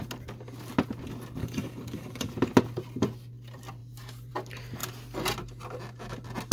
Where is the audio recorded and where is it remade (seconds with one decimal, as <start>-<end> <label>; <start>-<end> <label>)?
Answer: 0.0-1.4 recorded; 1.4-2.3 remade; 2.3-6.5 recorded